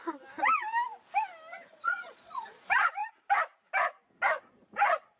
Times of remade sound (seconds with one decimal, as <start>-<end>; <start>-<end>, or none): 1.7-2.6